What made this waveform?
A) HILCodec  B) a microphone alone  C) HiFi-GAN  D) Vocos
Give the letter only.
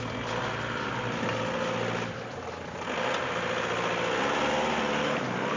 B